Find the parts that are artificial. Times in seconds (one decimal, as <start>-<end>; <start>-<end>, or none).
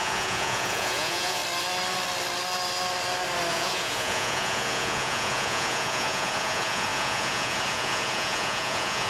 0.0-1.4; 3.5-9.1